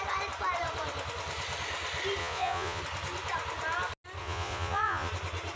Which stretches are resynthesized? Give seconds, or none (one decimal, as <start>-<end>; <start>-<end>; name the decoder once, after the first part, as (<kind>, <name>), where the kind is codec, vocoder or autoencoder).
2.2-2.8 (vocoder, Vocos); 4.2-5.1